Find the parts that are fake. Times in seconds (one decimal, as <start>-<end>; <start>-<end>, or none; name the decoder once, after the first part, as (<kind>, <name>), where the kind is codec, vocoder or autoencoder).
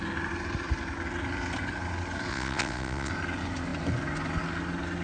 2.3-3.1 (vocoder, WaveNeXt)